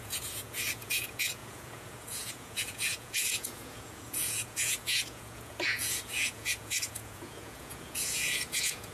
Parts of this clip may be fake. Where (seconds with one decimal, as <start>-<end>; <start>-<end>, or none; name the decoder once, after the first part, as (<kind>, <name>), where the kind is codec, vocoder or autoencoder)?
0.0-8.9 (vocoder, Vocos)